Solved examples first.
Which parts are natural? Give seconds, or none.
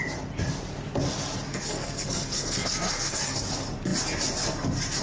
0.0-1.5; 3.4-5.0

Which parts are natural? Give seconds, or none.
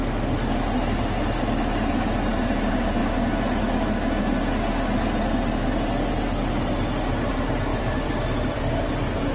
0.0-7.7; 8.6-9.3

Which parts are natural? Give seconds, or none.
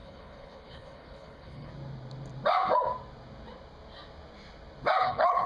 1.7-5.0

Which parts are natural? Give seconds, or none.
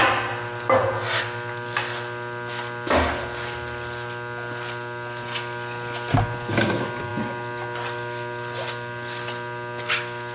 0.0-10.3